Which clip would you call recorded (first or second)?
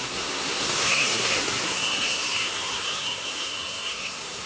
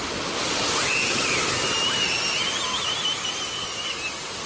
second